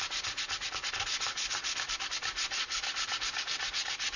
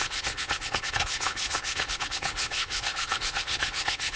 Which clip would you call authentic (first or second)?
first